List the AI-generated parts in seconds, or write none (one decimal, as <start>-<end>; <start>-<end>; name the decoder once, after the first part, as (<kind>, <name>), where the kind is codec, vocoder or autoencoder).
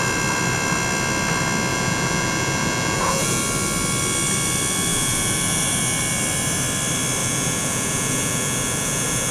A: 1.7-3.4 (vocoder, Vocos); 4.9-5.8; 7.2-9.3